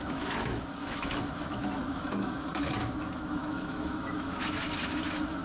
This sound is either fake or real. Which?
fake